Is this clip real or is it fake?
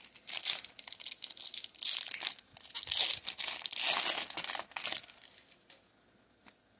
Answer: real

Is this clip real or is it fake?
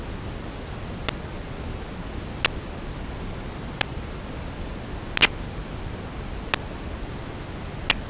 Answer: real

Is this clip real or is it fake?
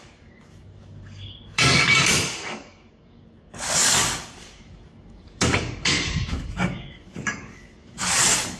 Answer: fake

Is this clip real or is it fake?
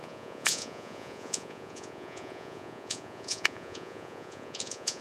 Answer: fake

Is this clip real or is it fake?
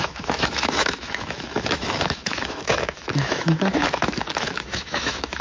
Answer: fake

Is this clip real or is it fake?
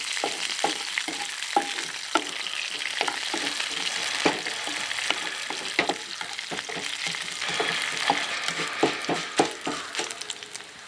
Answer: real